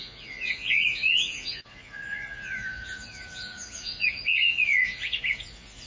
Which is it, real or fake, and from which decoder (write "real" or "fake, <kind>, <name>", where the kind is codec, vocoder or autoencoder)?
fake, vocoder, Vocos